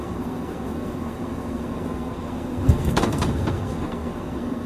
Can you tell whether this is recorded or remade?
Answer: remade